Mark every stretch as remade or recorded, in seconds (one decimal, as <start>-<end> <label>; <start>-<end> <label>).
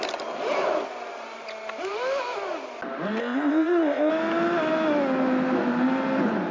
0.0-3.2 recorded; 3.2-4.1 remade; 4.1-6.5 recorded